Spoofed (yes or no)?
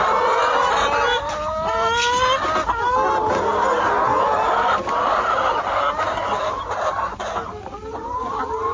no